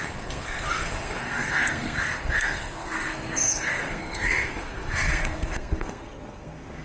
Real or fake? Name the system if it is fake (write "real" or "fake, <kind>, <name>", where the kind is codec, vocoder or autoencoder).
fake, codec, SNAC